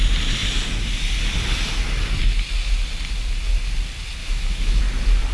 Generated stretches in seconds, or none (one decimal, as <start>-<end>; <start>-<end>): 4.2-4.8